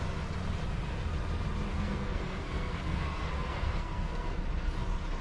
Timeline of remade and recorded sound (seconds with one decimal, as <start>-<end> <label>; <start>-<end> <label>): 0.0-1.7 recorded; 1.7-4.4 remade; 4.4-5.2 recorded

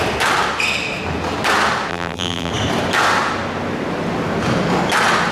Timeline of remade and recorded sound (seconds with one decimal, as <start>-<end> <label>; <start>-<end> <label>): 0.0-1.9 recorded; 1.9-2.5 remade; 2.5-5.3 recorded

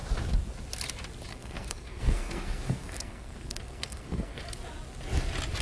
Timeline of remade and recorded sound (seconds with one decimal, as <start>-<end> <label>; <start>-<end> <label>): 0.0-1.3 recorded; 1.3-4.4 remade; 4.4-5.6 recorded

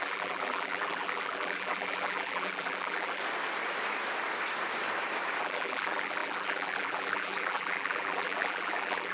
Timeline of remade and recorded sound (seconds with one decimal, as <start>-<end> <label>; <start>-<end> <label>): 0.0-3.2 remade; 3.2-5.4 recorded; 5.4-9.1 remade

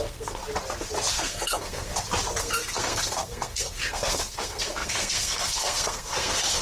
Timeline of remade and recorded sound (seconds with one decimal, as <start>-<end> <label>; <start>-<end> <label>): 0.0-0.4 remade; 0.4-1.1 recorded; 1.1-1.9 remade; 1.9-2.4 recorded; 2.4-6.6 remade

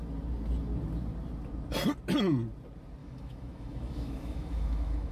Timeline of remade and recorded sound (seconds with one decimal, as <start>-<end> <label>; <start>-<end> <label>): 0.0-3.0 recorded; 3.0-5.1 remade